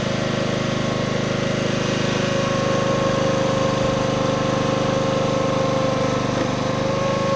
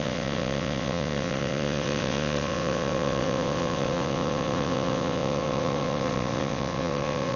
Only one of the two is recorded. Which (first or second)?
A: first